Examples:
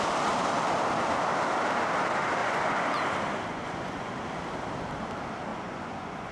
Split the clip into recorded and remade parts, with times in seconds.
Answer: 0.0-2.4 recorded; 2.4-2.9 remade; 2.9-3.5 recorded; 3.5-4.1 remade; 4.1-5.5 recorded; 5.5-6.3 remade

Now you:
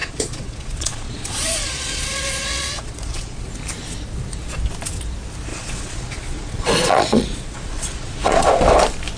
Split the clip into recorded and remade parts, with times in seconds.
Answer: 0.0-3.5 remade; 3.5-5.5 recorded; 5.5-8.5 remade; 8.5-9.2 recorded

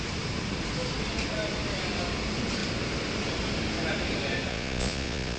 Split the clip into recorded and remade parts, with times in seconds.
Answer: 0.0-4.5 recorded; 4.5-5.4 remade

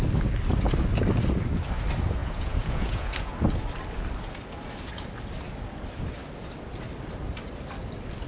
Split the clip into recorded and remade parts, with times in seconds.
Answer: 0.0-2.2 recorded; 2.2-3.3 remade; 3.3-8.3 recorded

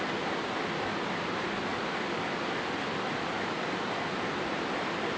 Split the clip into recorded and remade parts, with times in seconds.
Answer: 0.0-5.2 recorded

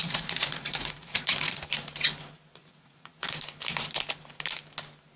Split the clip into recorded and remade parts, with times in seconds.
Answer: 0.0-1.6 remade; 1.6-2.6 recorded; 2.6-3.3 remade; 3.3-5.2 recorded

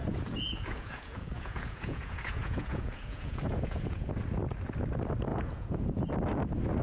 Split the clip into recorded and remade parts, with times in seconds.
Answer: 0.0-4.1 remade; 4.1-5.3 recorded; 5.3-6.1 remade; 6.1-6.8 recorded